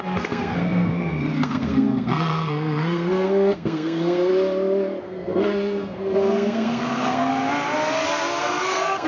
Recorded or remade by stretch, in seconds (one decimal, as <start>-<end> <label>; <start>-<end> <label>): 0.0-4.3 remade; 4.3-5.0 recorded; 5.0-7.3 remade; 7.3-8.4 recorded; 8.4-9.1 remade